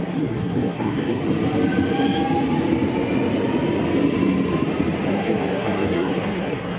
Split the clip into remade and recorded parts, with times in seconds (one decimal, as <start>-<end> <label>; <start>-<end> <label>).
0.0-1.2 remade; 1.2-5.1 recorded; 5.1-6.8 remade